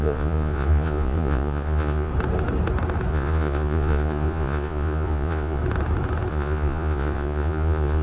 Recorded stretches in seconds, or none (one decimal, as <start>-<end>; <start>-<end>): 2.1-3.1; 5.6-6.3